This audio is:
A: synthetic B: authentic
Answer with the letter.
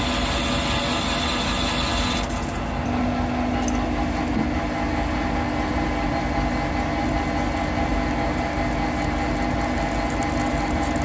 B